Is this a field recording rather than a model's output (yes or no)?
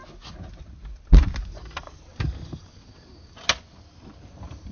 yes